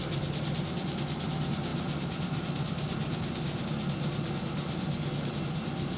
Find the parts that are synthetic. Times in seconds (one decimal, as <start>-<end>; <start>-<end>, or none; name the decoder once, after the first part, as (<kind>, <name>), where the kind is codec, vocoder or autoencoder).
none

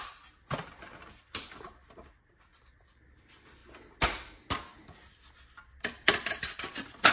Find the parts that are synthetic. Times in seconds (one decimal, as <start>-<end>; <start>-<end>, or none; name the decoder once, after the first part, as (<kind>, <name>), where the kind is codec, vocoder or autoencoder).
none